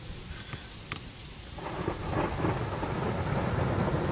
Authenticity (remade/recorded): recorded